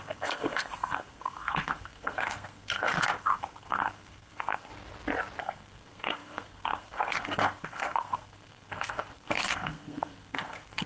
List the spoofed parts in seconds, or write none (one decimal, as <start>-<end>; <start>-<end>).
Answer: 0.0-4.7; 5.4-10.9